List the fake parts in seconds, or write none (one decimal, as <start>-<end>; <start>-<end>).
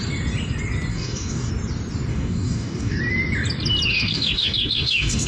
0.9-1.5; 2.1-3.0; 3.9-5.3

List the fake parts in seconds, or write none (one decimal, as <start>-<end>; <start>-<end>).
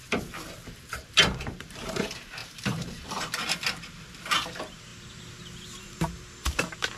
0.7-7.0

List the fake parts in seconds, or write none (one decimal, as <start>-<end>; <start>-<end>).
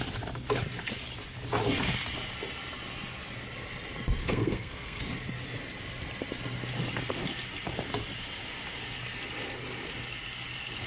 4.2-5.0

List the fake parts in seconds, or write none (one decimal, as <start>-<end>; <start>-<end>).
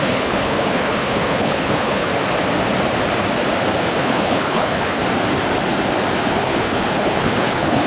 0.0-2.1; 3.8-5.0; 6.2-7.9